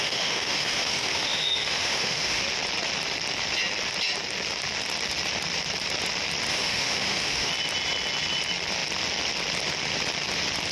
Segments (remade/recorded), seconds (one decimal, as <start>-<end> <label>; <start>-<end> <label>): 0.0-2.4 remade; 2.4-6.5 recorded; 6.5-7.5 remade; 7.5-10.7 recorded